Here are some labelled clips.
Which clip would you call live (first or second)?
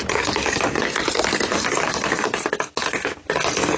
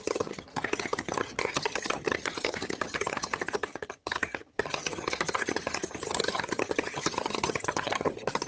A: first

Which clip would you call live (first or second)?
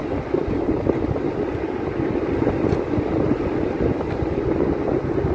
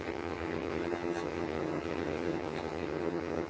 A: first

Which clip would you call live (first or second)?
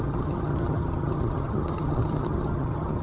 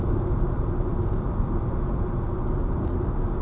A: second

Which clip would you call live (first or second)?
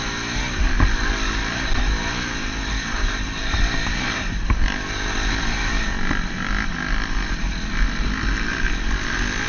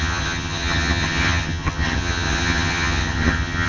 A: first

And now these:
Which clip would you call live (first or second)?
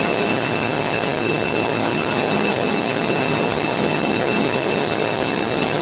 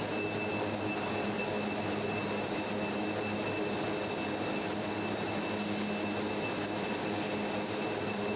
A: second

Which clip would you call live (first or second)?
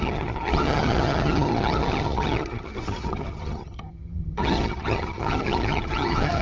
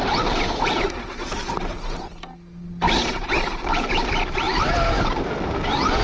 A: second